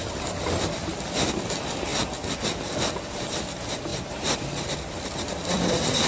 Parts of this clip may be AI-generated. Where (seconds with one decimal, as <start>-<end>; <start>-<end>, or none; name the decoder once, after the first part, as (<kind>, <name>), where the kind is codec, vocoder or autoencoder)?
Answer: 0.0-0.8 (vocoder, BigVGAN v2); 3.9-6.1